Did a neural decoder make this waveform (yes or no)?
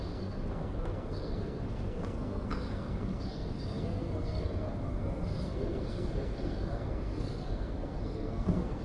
yes